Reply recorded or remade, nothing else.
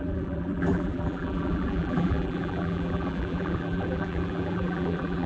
remade